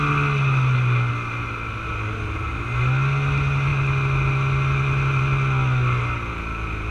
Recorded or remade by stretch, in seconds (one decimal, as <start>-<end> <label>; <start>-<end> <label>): 0.0-6.9 recorded